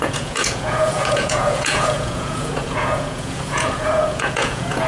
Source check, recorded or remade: remade